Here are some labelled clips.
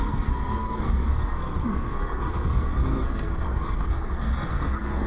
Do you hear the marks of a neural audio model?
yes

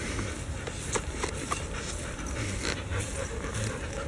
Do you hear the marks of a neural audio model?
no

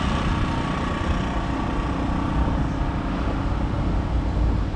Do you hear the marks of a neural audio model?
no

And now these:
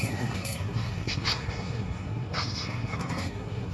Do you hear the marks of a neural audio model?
yes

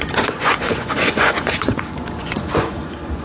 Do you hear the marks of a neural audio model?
yes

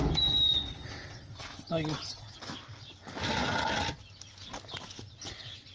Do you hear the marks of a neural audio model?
no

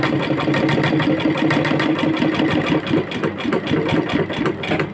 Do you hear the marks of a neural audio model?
no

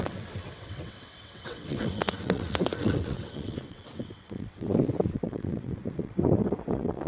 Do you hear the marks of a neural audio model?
yes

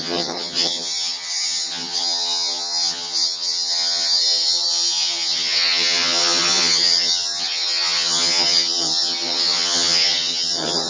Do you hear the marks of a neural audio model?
yes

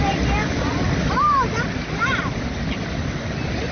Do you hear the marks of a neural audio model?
no